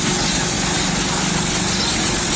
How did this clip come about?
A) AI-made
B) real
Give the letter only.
B